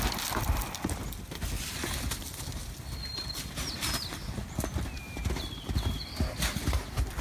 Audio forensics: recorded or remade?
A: recorded